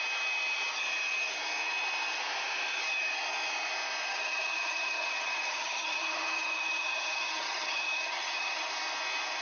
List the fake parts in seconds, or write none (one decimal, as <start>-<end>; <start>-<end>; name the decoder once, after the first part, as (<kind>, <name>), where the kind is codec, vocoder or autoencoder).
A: 4.1-8.7 (vocoder, HiFi-GAN)